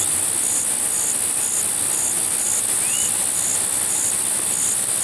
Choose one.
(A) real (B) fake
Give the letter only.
A